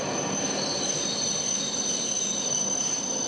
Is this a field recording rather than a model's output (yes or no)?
no